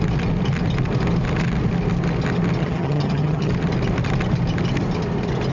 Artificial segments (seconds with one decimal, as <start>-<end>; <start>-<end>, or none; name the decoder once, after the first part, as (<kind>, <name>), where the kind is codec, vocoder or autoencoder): 2.6-3.5 (vocoder, HiFi-GAN)